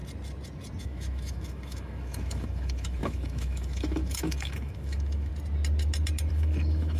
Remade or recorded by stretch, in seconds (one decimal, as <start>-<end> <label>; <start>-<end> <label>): 0.0-0.8 recorded; 0.8-5.3 remade; 5.3-6.3 recorded; 6.3-7.0 remade

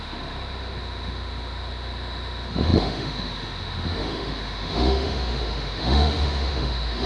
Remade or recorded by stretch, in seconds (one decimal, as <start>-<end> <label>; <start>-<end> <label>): 0.0-7.1 remade

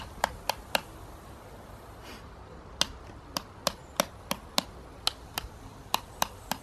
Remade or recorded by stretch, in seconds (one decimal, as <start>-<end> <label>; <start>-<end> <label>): 0.0-6.6 recorded

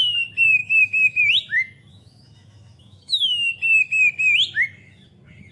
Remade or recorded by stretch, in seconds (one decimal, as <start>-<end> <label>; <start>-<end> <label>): 0.0-0.6 recorded; 0.6-1.2 remade; 1.2-1.9 recorded; 1.9-3.5 remade; 3.5-5.5 recorded

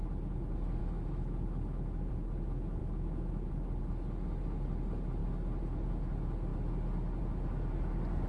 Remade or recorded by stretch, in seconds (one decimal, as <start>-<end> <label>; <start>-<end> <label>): 0.0-0.8 recorded; 0.8-2.1 remade; 2.1-2.8 recorded; 2.8-3.5 remade; 3.5-8.3 recorded

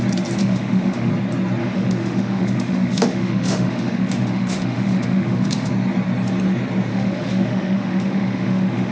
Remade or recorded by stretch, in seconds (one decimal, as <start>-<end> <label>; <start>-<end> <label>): 0.0-0.4 recorded; 0.4-1.1 remade; 1.1-1.6 recorded; 1.6-5.7 remade; 5.7-6.9 recorded; 6.9-8.9 remade

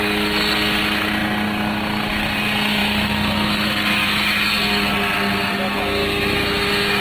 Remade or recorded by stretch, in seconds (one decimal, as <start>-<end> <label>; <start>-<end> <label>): 0.0-2.8 recorded; 2.8-4.5 remade; 4.5-6.0 recorded; 6.0-7.0 remade